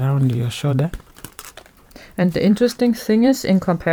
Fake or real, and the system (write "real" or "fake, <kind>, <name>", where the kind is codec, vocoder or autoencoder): fake, vocoder, BigVGAN v2